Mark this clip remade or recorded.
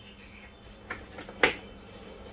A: recorded